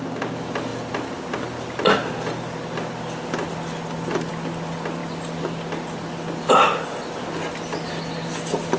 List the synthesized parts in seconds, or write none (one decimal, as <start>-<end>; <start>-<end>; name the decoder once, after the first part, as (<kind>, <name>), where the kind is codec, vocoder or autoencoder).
none